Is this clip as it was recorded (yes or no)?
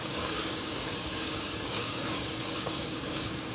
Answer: no